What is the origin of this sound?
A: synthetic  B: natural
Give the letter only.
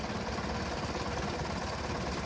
B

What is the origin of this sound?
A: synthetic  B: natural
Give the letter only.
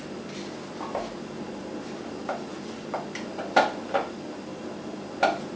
B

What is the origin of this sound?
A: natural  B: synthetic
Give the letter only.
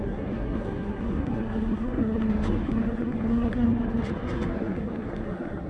B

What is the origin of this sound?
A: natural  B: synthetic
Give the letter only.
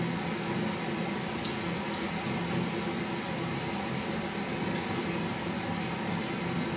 A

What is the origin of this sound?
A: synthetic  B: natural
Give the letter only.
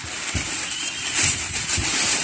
B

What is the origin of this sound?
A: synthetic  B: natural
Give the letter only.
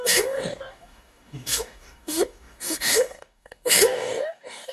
A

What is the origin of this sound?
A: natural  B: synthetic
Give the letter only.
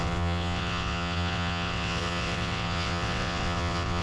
B